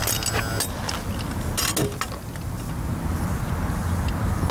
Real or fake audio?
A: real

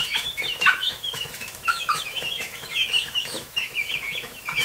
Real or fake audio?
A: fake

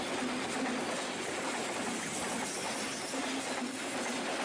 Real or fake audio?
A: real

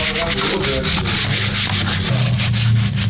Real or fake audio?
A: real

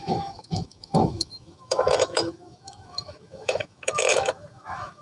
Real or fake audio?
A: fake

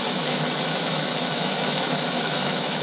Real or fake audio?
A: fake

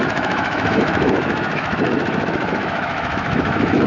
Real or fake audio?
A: fake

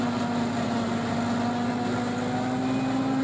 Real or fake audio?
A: real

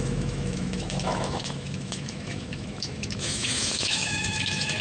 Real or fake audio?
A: fake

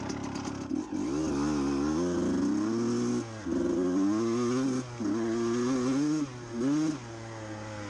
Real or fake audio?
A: real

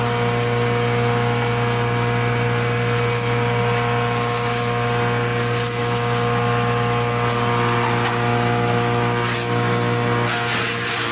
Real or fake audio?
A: real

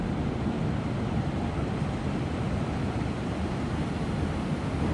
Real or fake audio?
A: real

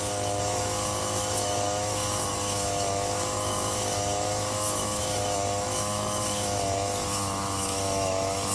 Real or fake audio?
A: fake